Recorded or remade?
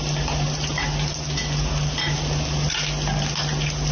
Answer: recorded